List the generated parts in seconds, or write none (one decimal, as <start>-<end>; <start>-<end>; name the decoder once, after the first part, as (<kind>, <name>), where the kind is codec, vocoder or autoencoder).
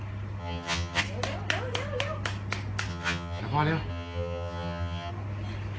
0.4-1.0 (vocoder, HiFi-GAN); 2.9-3.4; 3.9-5.1